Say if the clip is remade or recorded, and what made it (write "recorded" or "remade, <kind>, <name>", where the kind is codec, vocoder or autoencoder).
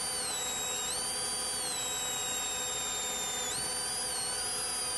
recorded